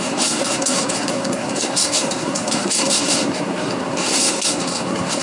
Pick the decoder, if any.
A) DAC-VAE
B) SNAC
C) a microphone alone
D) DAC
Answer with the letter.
B